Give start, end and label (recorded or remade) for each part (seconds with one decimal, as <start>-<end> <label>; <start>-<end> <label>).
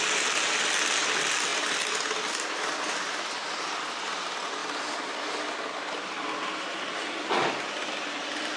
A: 0.0-8.6 recorded